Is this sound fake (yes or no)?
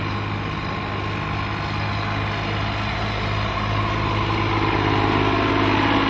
no